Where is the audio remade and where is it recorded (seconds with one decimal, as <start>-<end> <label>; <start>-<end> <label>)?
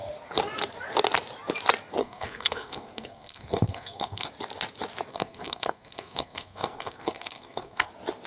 0.0-2.0 recorded; 2.0-4.3 remade; 4.3-5.1 recorded; 5.1-7.9 remade; 7.9-8.3 recorded